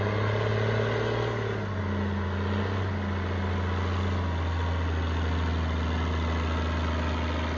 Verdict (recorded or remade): recorded